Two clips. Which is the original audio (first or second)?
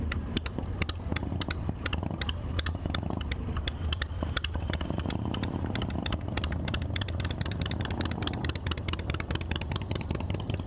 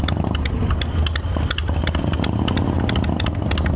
second